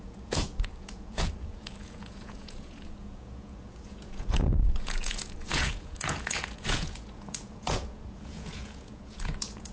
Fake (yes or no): yes